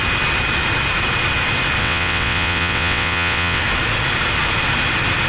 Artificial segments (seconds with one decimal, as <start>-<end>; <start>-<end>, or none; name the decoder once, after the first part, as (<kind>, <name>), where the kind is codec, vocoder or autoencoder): 1.8-3.6 (vocoder, WaveNeXt)